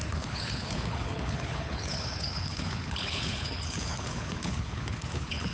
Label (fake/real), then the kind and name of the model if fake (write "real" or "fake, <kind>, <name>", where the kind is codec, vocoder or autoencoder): fake, codec, HILCodec